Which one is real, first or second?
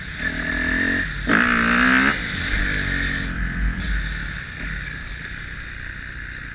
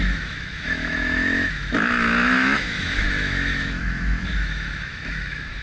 first